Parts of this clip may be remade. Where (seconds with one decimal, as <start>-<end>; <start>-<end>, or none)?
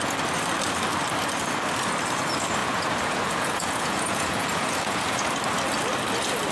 2.6-5.3